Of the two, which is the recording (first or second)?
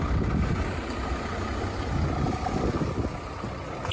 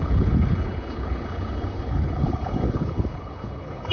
first